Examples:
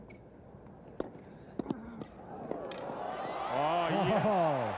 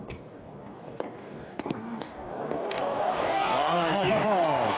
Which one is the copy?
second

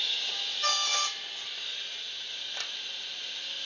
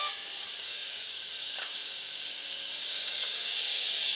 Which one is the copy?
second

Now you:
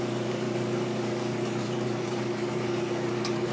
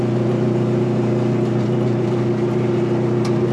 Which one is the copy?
first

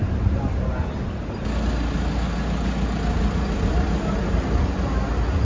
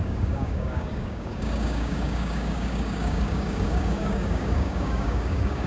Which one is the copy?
second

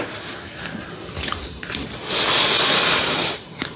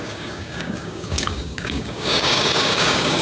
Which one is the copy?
second